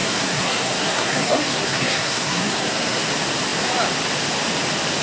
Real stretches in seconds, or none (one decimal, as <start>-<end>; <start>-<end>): 3.0-5.0